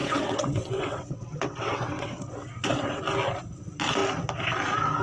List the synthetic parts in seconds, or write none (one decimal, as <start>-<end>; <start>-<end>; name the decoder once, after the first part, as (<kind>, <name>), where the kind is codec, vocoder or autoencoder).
0.0-3.0 (vocoder, WaveNeXt)